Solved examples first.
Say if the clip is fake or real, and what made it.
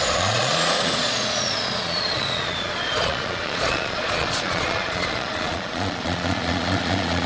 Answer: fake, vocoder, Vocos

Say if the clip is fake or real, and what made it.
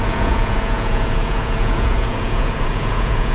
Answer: fake, vocoder, Vocos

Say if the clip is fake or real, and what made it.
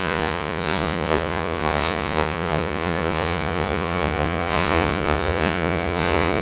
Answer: fake, vocoder, Vocos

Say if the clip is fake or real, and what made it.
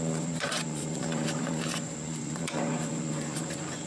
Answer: fake, vocoder, Vocos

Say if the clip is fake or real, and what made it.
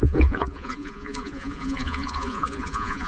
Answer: fake, vocoder, Vocos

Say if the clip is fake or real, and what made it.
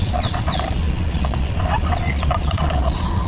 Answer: fake, vocoder, Vocos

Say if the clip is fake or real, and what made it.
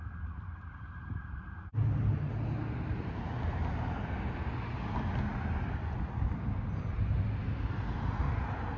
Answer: real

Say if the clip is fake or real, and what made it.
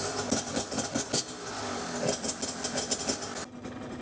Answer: real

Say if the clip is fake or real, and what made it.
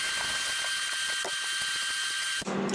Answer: real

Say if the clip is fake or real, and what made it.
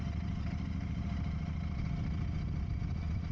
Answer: real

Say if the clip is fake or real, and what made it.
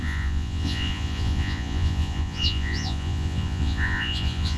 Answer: fake, vocoder, Vocos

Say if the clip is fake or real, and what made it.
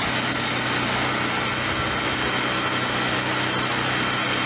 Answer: real